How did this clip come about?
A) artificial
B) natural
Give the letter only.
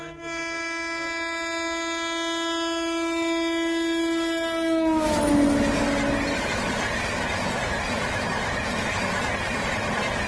B